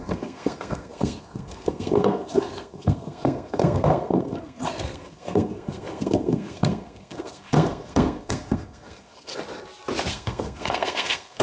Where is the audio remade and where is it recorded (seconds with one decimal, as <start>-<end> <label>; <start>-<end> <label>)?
0.0-9.3 remade; 9.3-10.1 recorded; 10.1-11.4 remade